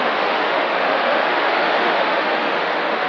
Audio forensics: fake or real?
fake